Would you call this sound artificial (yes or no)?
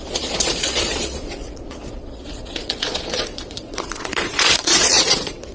yes